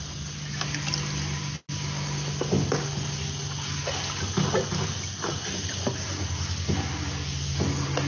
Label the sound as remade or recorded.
recorded